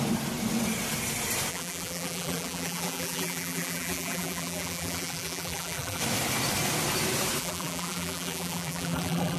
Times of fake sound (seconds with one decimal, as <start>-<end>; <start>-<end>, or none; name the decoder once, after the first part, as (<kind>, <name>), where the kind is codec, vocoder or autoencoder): 1.5-6.0 (vocoder, BigVGAN v2); 7.4-9.4